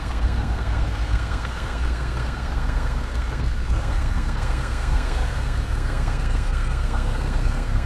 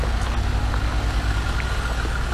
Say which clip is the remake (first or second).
first